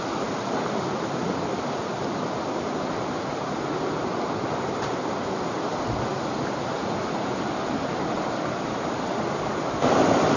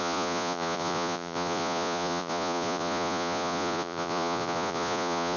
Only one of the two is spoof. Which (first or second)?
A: second